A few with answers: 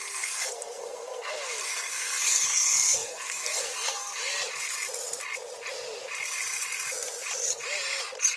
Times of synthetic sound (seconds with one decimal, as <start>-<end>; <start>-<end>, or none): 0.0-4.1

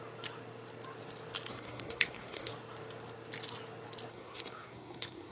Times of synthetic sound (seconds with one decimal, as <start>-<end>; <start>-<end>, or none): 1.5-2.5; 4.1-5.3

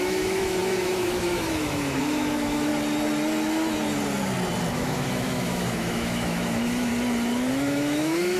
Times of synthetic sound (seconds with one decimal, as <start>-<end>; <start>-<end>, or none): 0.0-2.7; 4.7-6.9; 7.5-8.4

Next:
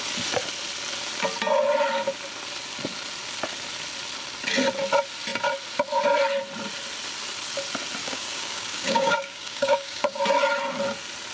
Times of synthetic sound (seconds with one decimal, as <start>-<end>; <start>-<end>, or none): 8.0-10.2